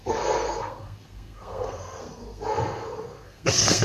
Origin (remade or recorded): remade